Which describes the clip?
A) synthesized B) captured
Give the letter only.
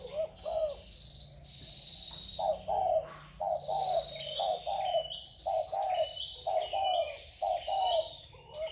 B